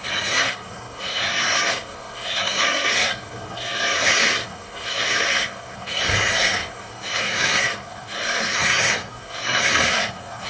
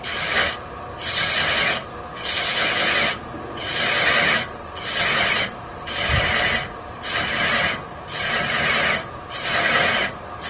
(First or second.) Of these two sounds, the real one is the second